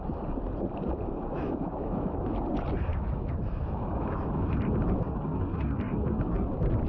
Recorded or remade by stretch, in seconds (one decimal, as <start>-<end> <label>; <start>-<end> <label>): 0.0-1.3 recorded; 1.3-2.3 remade; 2.3-2.9 recorded; 2.9-4.6 remade; 4.6-6.9 recorded